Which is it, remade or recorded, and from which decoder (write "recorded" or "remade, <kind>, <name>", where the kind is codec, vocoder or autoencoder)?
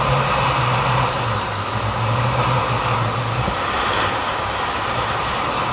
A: recorded